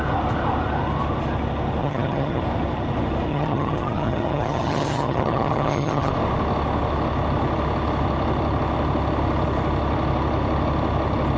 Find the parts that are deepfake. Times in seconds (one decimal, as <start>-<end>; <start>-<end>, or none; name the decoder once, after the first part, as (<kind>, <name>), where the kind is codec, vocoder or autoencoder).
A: 1.8-2.4 (vocoder, HiFi-GAN); 3.3-6.1